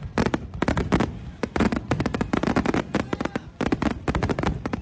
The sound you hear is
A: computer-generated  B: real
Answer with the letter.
B